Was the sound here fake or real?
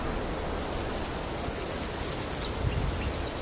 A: real